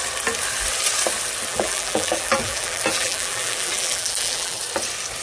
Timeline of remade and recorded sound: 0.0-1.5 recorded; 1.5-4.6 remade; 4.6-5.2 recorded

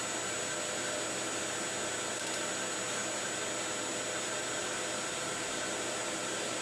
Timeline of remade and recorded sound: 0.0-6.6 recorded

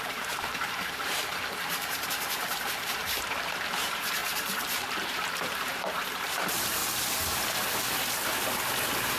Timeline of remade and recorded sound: 0.0-3.0 remade; 3.0-3.7 recorded; 3.7-6.8 remade; 6.8-9.2 recorded

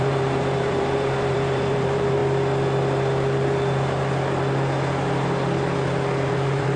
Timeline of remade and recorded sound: 0.0-2.2 remade; 2.2-6.3 recorded; 6.3-6.8 remade

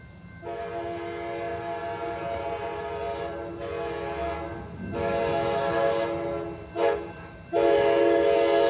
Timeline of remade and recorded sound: 0.0-8.7 recorded

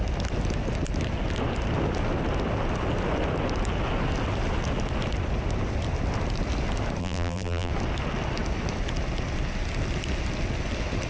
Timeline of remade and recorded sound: 0.0-7.0 recorded; 7.0-7.7 remade; 7.7-11.1 recorded